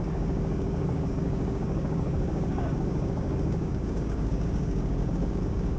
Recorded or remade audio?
remade